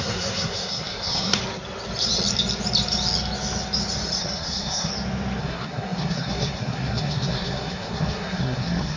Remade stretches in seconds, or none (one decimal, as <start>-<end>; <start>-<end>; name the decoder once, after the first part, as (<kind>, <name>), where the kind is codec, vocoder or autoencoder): 0.0-1.4 (codec, SNAC); 4.2-4.9; 5.4-9.0